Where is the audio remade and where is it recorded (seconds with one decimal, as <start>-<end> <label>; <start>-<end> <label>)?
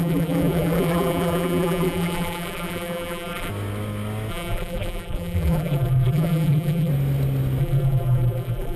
0.0-3.5 remade; 3.5-4.3 recorded; 4.3-6.9 remade; 6.9-7.6 recorded; 7.6-8.8 remade